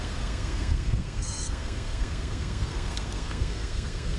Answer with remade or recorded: remade